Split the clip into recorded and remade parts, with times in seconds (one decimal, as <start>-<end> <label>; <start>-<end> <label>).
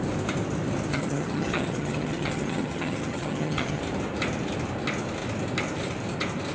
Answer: 0.0-0.9 recorded; 0.9-3.8 remade; 3.8-6.5 recorded